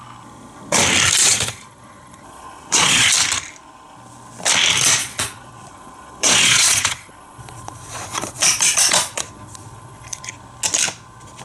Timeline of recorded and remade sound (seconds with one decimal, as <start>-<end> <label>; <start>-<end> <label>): 0.0-1.2 recorded; 1.2-3.1 remade; 3.1-5.0 recorded; 5.0-10.2 remade; 10.2-11.4 recorded